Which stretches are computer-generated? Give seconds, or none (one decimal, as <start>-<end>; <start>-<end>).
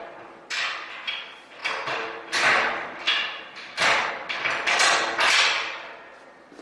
none